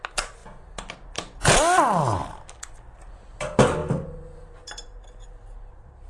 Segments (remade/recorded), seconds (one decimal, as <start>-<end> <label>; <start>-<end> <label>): 0.0-6.1 recorded